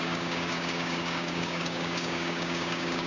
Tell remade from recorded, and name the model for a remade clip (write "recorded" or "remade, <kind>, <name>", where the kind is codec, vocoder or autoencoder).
remade, codec, DAC